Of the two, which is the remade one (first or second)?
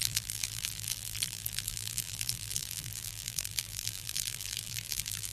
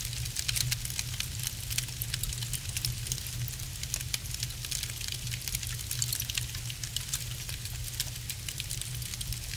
first